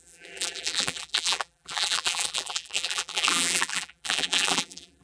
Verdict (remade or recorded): remade